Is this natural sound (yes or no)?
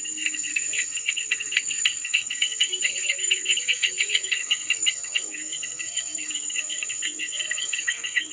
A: no